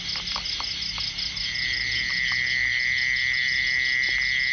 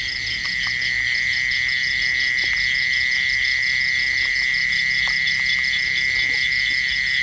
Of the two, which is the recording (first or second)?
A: first